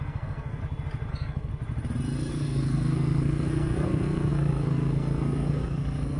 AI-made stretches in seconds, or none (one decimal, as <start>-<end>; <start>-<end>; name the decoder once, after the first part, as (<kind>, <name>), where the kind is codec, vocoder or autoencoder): 0.0-0.6 (codec, SNAC); 1.1-1.5; 2.3-6.2